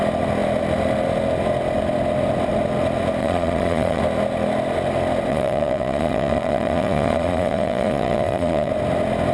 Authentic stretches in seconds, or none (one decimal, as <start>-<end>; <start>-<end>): 0.0-3.2; 4.0-5.3; 8.7-9.3